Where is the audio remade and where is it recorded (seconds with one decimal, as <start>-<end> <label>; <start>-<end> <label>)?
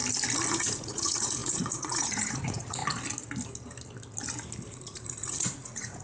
0.0-0.5 recorded; 0.5-2.8 remade; 2.8-4.7 recorded; 4.7-6.0 remade